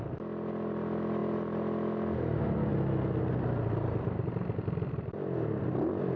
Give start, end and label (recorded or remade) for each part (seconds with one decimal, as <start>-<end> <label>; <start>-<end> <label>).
0.0-6.2 recorded